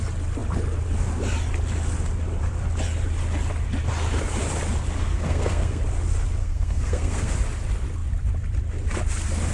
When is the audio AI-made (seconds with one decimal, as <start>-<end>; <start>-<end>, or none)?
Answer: 5.0-5.8; 6.4-7.3

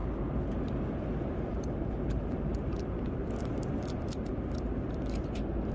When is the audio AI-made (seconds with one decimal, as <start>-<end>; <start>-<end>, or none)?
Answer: none